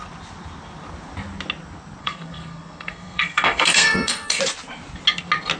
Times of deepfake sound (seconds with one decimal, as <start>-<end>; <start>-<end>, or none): 2.0-4.4